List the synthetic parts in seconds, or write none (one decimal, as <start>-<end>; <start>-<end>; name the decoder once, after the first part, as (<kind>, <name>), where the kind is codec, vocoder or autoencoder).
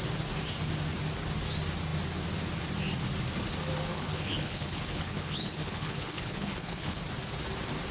3.9-7.0 (codec, HILCodec)